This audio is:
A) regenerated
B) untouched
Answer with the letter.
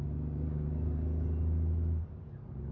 B